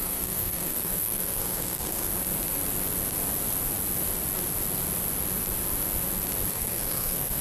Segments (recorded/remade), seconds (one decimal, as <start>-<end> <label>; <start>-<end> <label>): 0.0-2.1 remade; 2.1-6.5 recorded; 6.5-7.4 remade